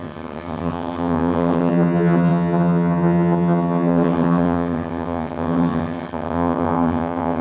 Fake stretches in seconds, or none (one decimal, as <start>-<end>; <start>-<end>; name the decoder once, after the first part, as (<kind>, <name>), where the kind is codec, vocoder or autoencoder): 0.0-7.4 (vocoder, HiFi-GAN)